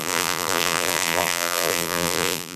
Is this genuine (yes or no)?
no